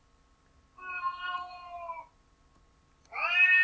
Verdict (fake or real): real